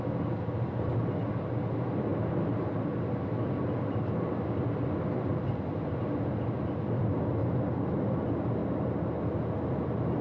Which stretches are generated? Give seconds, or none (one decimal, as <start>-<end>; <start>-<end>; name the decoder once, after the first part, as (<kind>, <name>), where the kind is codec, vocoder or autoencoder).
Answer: 7.4-8.1 (vocoder, BigVGAN v2)